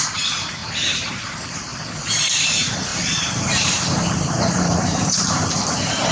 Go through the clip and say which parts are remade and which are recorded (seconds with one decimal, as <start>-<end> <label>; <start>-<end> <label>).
0.0-1.7 remade; 1.7-2.2 recorded; 2.2-6.1 remade